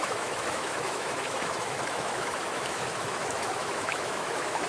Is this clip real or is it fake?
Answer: fake